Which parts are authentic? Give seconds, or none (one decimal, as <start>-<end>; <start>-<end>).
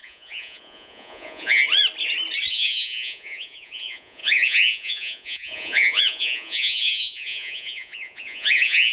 1.6-2.5